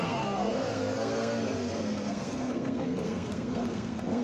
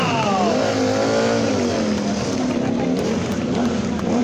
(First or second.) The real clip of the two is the second